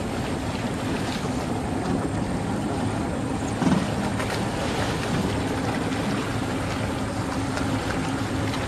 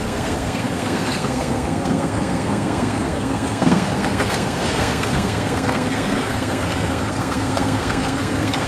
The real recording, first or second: first